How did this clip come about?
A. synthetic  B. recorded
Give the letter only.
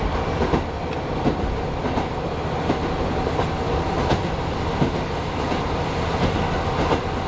B